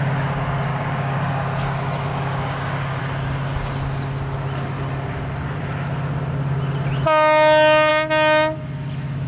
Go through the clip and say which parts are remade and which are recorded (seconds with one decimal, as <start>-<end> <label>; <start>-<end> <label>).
0.0-0.7 recorded; 0.7-1.3 remade; 1.3-2.1 recorded; 2.1-3.0 remade; 3.0-9.3 recorded